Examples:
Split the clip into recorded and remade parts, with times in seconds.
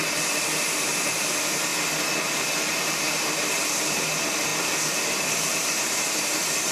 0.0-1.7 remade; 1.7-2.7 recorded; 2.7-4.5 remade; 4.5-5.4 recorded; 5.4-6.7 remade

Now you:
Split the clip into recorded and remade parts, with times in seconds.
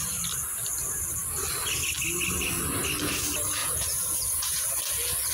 0.0-3.6 recorded; 3.6-4.7 remade; 4.7-5.3 recorded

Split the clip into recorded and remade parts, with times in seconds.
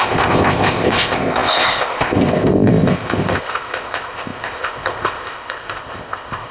0.0-6.5 remade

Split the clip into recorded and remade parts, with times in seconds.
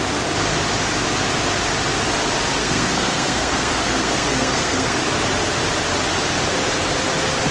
0.0-2.6 recorded; 2.6-5.0 remade; 5.0-7.5 recorded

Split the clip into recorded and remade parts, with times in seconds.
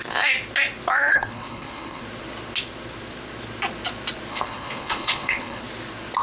0.0-1.1 recorded; 1.1-2.0 remade; 2.0-4.3 recorded; 4.3-5.6 remade; 5.6-6.2 recorded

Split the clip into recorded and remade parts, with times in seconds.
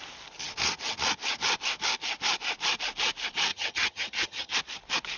0.0-3.5 recorded; 3.5-4.5 remade; 4.5-5.2 recorded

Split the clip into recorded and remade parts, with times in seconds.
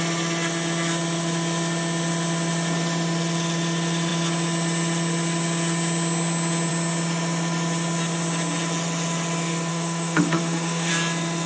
0.0-9.7 recorded; 9.7-10.9 remade; 10.9-11.5 recorded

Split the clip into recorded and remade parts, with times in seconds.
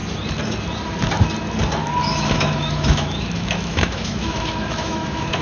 0.0-2.1 recorded; 2.1-5.4 remade